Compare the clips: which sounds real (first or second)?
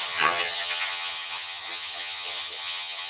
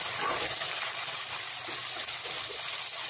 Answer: second